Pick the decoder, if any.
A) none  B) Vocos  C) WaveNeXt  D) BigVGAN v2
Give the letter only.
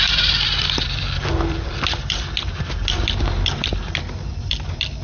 D